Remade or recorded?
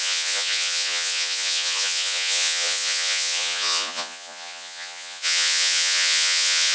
remade